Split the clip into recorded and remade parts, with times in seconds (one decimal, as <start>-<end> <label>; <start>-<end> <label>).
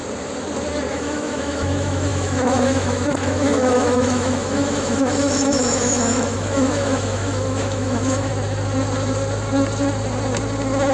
0.0-0.9 recorded; 0.9-8.3 remade; 8.3-10.9 recorded